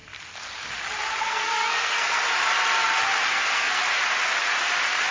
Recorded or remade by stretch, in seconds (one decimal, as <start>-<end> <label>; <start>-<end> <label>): 0.0-1.2 recorded; 1.2-2.2 remade; 2.2-3.3 recorded; 3.3-3.8 remade; 3.8-5.1 recorded